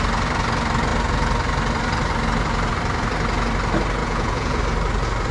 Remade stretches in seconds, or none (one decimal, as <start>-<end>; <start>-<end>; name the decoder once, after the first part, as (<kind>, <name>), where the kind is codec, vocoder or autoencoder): 4.0-4.6 (vocoder, Vocos)